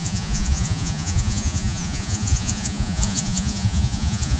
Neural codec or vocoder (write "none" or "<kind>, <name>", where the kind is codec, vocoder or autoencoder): vocoder, Vocos